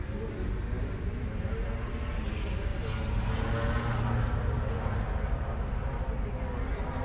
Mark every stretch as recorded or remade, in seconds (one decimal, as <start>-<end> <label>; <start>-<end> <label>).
0.0-7.0 recorded